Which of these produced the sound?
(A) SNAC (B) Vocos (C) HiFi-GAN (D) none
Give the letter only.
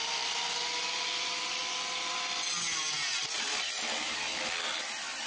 D